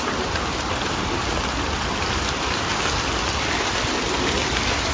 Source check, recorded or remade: recorded